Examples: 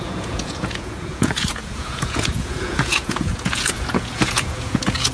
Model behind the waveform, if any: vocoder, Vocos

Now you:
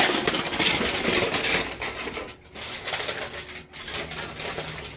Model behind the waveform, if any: none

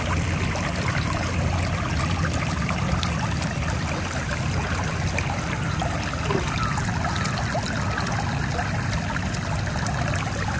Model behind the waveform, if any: none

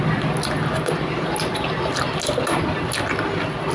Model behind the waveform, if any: none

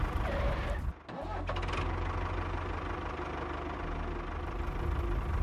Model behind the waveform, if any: none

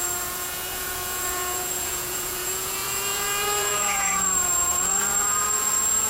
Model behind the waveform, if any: vocoder, Vocos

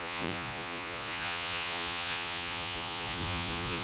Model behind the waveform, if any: vocoder, Vocos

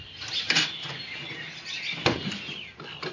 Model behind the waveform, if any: none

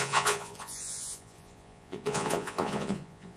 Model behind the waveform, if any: vocoder, Vocos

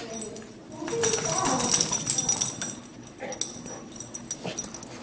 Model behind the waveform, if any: none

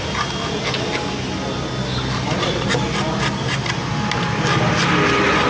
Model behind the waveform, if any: none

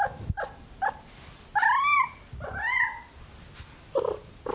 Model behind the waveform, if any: none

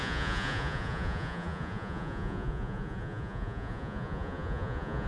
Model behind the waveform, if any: vocoder, Vocos